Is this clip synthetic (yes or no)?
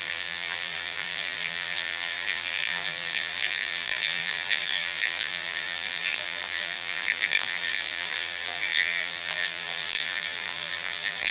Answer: yes